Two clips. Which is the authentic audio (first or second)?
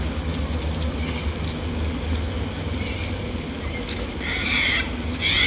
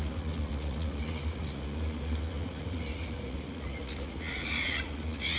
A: first